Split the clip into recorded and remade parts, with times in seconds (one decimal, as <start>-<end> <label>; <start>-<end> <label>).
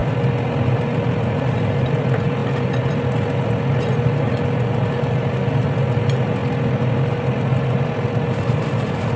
0.0-0.7 recorded; 0.7-2.4 remade; 2.4-4.2 recorded; 4.2-6.4 remade; 6.4-8.3 recorded; 8.3-9.2 remade